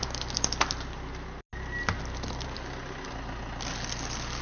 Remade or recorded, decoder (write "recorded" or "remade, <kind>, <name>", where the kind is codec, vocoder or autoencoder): recorded